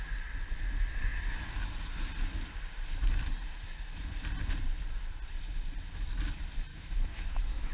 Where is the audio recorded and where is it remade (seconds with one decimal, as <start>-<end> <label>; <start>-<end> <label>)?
0.0-6.7 recorded; 6.7-7.7 remade

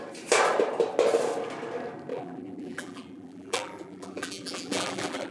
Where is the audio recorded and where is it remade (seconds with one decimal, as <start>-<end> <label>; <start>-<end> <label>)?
0.0-2.1 recorded; 2.1-5.3 remade

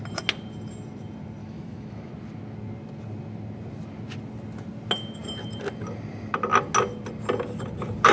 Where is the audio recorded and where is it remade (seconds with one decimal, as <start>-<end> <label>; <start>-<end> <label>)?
0.0-1.4 recorded; 1.4-2.1 remade; 2.1-8.1 recorded

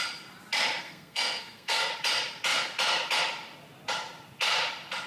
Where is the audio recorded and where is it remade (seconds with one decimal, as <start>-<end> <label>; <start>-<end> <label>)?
0.0-0.8 recorded; 0.8-1.9 remade; 1.9-5.1 recorded

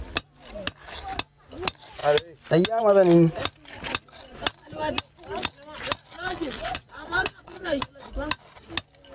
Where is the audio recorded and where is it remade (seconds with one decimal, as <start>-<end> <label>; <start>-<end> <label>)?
0.0-6.1 recorded; 6.1-7.9 remade; 7.9-9.1 recorded

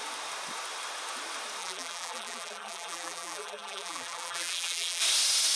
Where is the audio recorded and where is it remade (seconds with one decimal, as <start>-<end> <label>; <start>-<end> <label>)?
0.0-1.6 recorded; 1.6-5.0 remade; 5.0-5.6 recorded